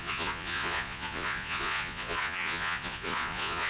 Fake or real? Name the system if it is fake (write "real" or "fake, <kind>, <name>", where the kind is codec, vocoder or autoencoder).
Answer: fake, vocoder, Vocos